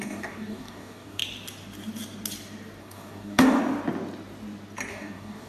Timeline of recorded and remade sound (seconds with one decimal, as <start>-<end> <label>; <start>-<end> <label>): 0.0-1.2 remade; 1.2-2.8 recorded; 2.8-3.6 remade; 3.6-4.9 recorded; 4.9-5.5 remade